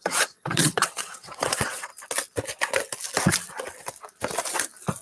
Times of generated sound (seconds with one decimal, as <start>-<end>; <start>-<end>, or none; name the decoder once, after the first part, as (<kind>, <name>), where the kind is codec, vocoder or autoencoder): 0.0-1.9 (vocoder, WaveNeXt)